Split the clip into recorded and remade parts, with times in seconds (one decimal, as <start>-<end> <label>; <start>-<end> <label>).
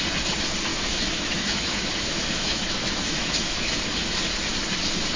0.0-0.7 recorded; 0.7-3.8 remade; 3.8-5.2 recorded